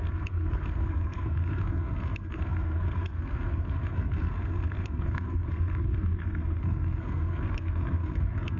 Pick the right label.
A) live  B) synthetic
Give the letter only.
B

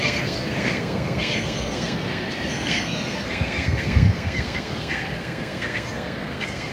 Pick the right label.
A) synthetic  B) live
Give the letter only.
A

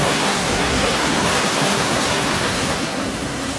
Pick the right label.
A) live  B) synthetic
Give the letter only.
B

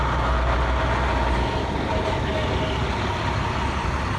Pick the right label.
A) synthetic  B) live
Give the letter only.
B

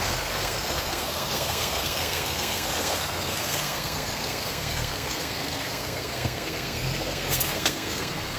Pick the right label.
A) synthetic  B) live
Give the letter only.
A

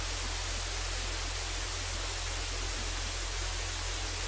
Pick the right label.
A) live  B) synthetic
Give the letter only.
A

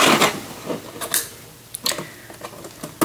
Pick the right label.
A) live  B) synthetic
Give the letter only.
A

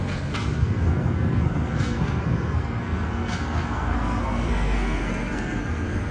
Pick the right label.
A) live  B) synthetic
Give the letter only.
B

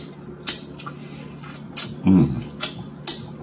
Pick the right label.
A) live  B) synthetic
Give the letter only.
A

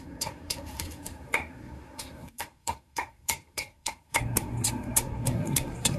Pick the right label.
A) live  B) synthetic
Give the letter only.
B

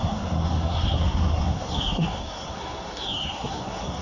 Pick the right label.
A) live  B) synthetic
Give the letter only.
B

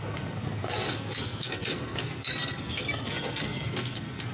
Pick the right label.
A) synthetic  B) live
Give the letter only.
A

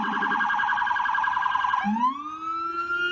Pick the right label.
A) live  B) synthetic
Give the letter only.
A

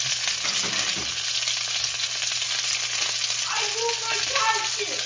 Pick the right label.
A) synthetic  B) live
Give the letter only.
B